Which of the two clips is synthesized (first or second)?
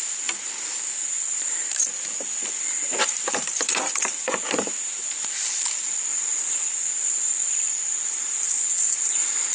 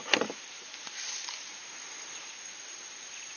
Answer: first